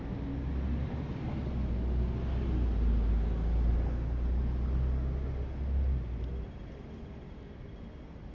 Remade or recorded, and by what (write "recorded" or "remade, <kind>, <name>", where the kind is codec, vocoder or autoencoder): recorded